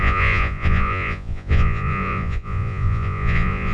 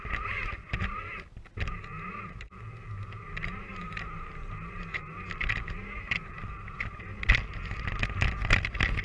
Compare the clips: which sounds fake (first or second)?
first